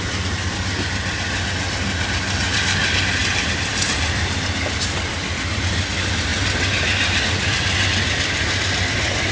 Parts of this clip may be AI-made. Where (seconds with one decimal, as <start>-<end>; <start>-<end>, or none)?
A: 0.0-6.3; 7.2-9.3